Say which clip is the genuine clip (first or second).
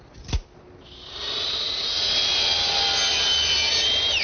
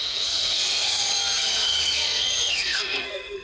first